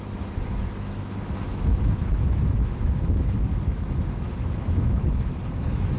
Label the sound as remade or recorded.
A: remade